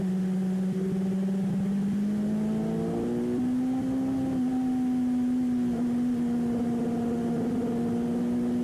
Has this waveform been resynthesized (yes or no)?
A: no